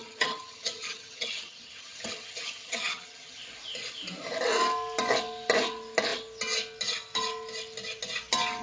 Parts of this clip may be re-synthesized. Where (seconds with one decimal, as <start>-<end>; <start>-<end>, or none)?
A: 0.0-3.4